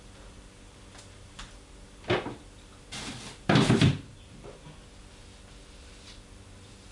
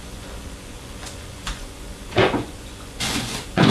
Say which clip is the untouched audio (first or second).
first